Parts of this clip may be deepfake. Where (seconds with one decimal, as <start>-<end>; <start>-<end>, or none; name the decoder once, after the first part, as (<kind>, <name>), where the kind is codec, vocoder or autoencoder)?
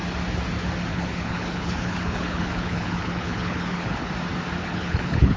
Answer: 0.9-4.1 (codec, HILCodec); 4.6-5.4